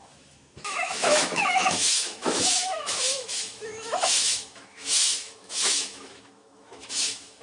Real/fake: fake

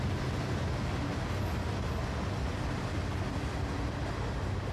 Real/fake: real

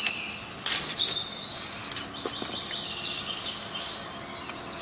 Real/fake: real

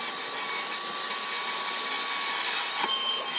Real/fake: real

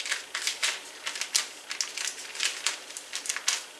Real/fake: real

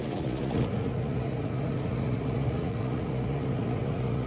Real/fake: fake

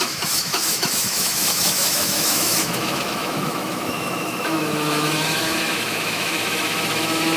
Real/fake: fake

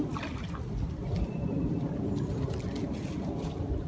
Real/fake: fake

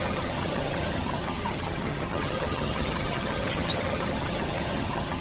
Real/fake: fake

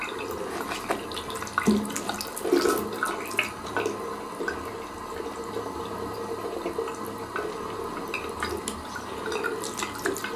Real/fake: real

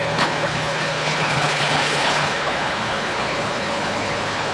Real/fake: fake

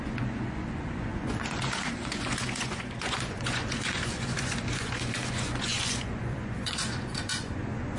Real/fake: fake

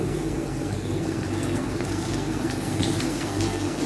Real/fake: fake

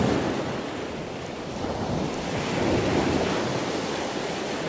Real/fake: real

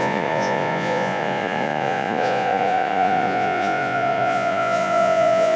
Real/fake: fake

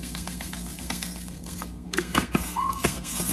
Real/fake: fake